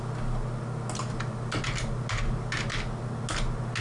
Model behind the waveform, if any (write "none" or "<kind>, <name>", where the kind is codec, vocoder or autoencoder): none